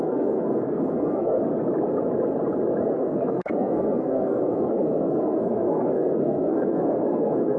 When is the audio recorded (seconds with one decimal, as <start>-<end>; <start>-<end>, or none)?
1.4-2.8